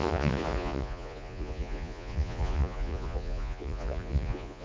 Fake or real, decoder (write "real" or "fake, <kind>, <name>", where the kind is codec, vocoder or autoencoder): fake, vocoder, Vocos